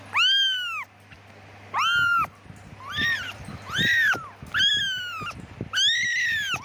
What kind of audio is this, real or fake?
real